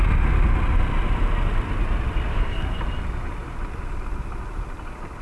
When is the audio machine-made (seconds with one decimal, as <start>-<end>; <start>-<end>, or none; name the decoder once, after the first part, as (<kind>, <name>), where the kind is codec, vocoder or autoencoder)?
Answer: 2.3-2.8 (codec, DAC)